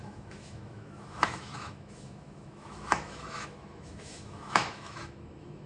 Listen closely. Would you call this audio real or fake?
fake